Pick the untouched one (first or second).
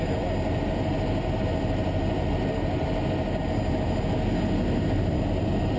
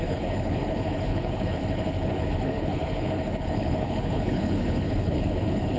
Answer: first